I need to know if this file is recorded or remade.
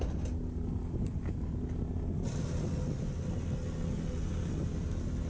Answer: recorded